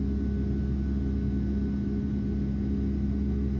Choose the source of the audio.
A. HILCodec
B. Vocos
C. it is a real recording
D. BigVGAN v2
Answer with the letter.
C